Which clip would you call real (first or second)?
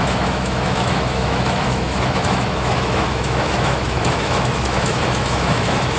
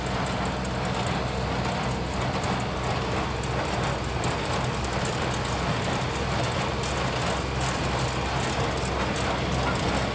second